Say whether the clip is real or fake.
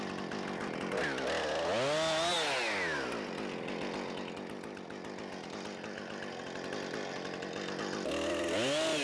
real